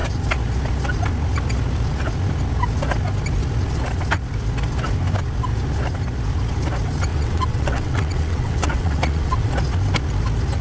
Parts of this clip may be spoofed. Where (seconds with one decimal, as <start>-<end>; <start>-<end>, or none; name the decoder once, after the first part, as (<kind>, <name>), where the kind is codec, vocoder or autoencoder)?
7.1-9.5 (vocoder, WaveNeXt)